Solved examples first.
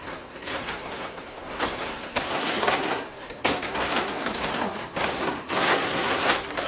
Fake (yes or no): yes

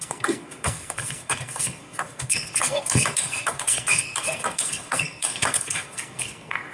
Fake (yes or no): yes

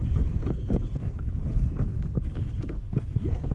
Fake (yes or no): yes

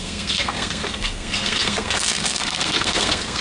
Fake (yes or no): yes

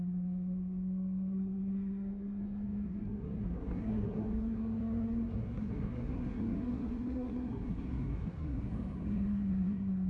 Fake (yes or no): yes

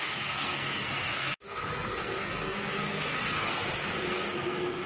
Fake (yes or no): yes